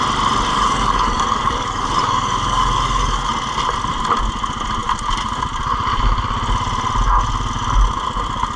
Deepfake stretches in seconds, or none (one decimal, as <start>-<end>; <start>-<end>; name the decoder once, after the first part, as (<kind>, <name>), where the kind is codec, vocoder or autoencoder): 0.5-3.3 (codec, DAC)